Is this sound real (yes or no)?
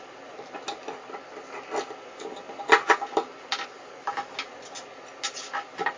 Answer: yes